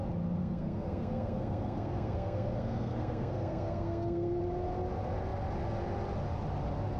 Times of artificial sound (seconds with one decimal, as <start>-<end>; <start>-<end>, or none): 0.4-4.4